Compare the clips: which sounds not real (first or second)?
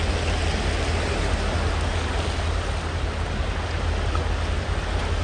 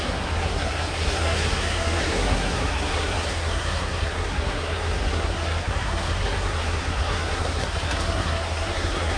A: second